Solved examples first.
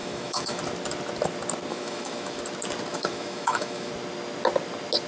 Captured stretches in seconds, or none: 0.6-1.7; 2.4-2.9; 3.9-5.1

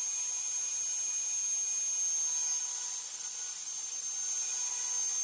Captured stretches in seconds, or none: 0.0-5.2

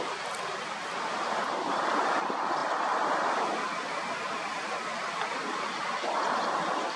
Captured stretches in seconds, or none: 0.0-7.0

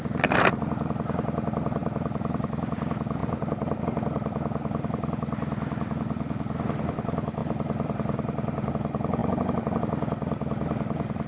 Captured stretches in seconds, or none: 0.0-1.8; 2.5-3.2; 3.8-7.4; 8.7-11.3

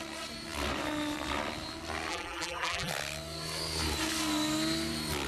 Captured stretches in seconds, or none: 0.0-2.1; 2.9-5.3

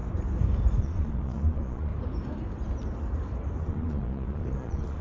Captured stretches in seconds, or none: 0.0-0.8; 1.9-3.6